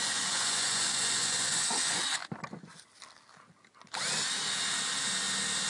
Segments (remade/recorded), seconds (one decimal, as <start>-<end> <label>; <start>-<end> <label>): 0.0-2.2 remade; 2.2-5.7 recorded